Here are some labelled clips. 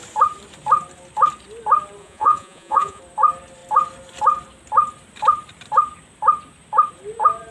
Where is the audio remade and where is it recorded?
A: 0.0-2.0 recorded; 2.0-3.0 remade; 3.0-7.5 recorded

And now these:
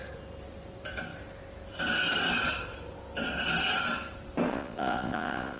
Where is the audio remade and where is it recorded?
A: 0.0-4.5 recorded; 4.5-5.6 remade

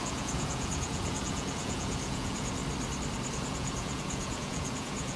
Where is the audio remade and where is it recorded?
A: 0.0-2.6 remade; 2.6-3.3 recorded; 3.3-5.2 remade